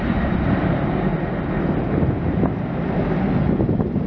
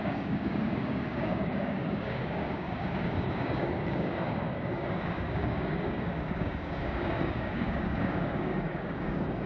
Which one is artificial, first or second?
second